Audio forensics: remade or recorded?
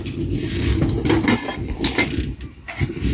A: recorded